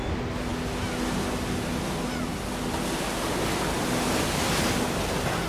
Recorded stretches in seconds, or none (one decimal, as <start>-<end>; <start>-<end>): 0.0-5.5